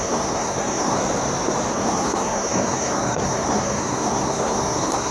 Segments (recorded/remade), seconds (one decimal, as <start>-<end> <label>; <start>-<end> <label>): 0.0-1.0 remade; 1.0-1.7 recorded; 1.7-5.1 remade